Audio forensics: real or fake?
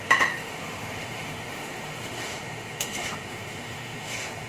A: fake